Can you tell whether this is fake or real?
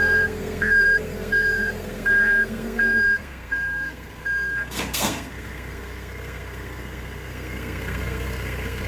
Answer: fake